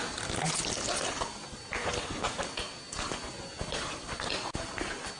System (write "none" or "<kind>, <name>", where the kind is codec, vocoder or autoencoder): none